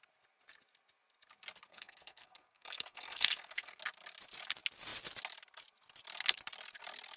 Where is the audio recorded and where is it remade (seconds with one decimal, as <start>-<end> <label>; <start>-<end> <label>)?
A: 0.0-1.7 recorded; 1.7-3.8 remade; 3.8-7.2 recorded